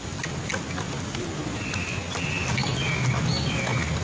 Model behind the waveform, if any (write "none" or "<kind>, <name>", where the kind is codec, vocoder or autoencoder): none